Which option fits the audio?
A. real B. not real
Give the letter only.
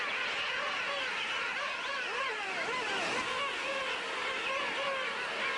A